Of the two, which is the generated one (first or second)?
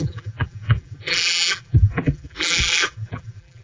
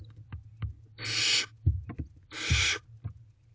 first